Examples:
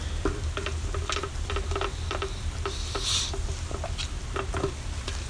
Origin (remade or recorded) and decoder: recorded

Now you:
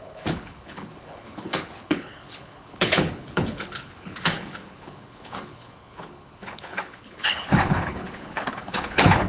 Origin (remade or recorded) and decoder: remade, codec, HILCodec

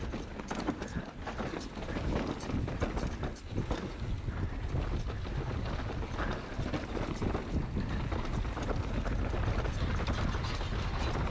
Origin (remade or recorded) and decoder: recorded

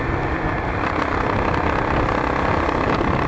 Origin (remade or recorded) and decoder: recorded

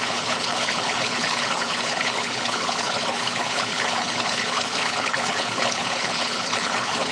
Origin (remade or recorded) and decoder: remade, codec, HILCodec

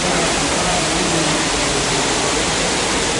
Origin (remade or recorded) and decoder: recorded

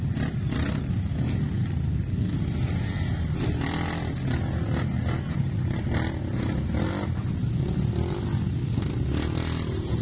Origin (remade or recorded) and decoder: recorded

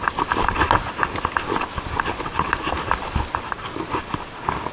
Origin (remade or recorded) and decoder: recorded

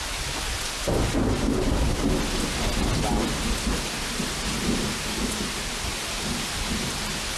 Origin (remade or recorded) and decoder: recorded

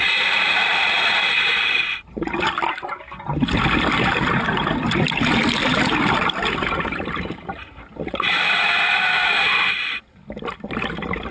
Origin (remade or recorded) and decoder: recorded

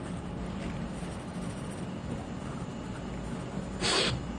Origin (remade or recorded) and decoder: recorded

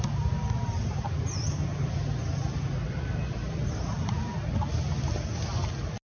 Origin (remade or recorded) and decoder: recorded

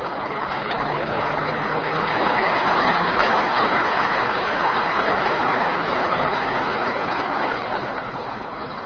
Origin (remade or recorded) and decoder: remade, codec, HILCodec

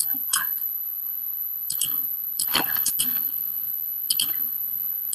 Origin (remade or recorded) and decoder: remade, codec, HILCodec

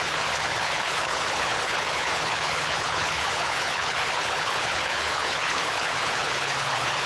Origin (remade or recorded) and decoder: remade, codec, HILCodec